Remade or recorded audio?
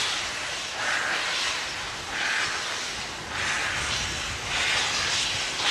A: recorded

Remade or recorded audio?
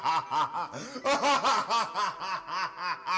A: recorded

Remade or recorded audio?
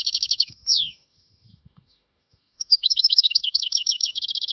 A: remade